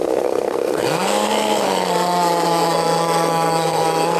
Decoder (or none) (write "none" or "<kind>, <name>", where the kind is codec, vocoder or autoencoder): codec, SNAC